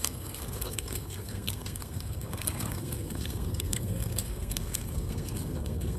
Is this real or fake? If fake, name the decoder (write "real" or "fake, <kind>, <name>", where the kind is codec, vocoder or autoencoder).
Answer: fake, codec, SNAC